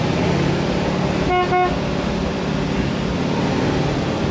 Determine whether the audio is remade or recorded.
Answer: recorded